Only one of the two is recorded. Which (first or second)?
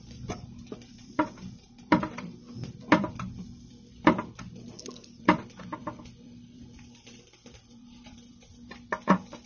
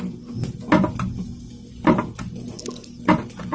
second